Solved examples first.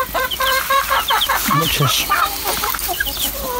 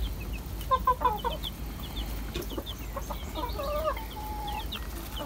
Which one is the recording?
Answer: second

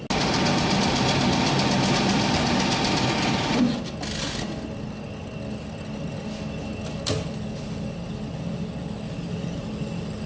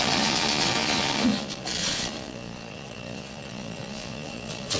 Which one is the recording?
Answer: first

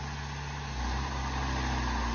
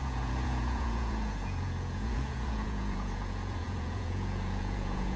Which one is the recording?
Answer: first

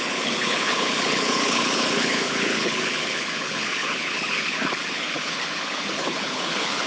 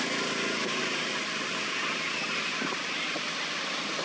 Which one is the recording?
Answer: second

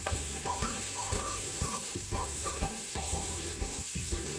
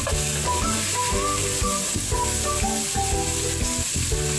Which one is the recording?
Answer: second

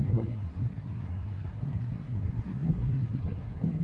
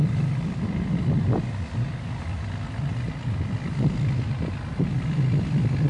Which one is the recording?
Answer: second